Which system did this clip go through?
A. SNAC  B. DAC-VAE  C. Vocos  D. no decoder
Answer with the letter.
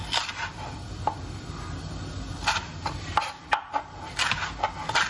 D